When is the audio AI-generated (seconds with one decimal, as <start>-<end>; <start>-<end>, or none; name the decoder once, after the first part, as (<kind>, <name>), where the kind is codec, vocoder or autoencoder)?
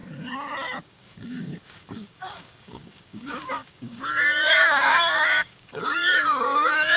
0.8-7.0 (codec, DAC)